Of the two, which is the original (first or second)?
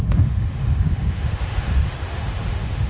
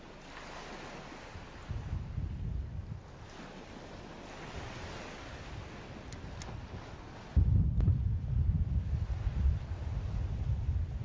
second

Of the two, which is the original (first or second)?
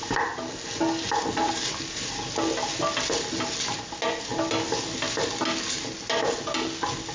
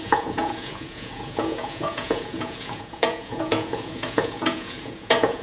first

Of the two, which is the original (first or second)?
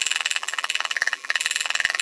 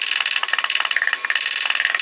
second